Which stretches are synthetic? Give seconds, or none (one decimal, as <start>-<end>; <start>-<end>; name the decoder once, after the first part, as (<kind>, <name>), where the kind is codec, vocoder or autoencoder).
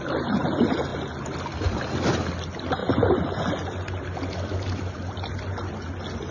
none